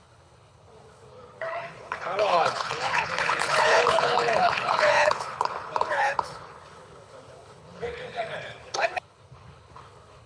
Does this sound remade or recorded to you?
remade